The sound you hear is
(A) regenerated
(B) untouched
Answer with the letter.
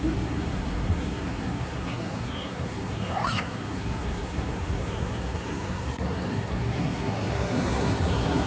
A